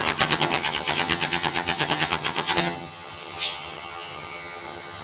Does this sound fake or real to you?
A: fake